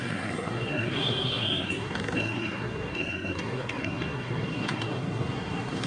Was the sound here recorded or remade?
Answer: remade